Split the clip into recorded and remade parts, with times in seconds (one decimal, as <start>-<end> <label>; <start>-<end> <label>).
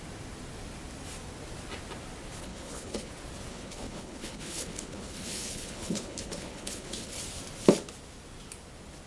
0.0-2.4 recorded; 2.4-3.1 remade; 3.1-3.5 recorded; 3.5-7.2 remade; 7.2-9.1 recorded